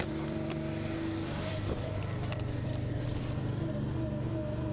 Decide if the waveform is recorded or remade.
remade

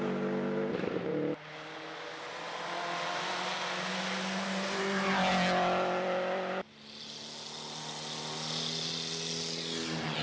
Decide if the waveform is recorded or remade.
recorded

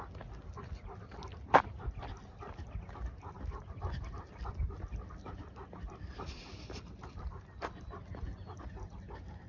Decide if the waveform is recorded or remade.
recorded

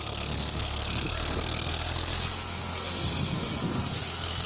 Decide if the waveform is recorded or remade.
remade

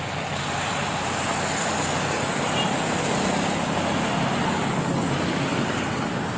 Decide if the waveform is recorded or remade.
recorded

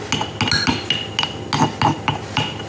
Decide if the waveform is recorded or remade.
recorded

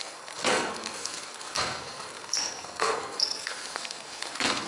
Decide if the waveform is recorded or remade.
remade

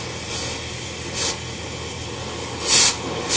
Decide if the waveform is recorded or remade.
recorded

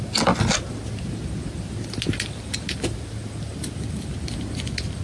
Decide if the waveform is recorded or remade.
recorded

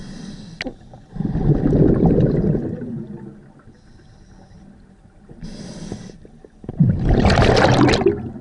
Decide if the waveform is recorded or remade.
recorded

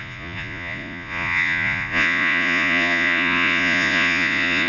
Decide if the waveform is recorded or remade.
remade